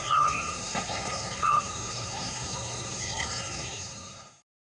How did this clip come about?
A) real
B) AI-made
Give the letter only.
B